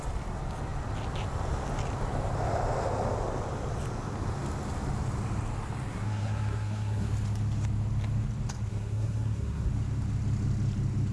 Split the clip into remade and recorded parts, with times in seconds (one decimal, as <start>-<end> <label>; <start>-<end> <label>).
0.0-5.9 recorded; 5.9-7.1 remade; 7.1-8.7 recorded; 8.7-9.7 remade; 9.7-11.1 recorded